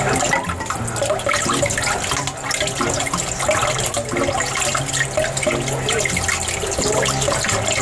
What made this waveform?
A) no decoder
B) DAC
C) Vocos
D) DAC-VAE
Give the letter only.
A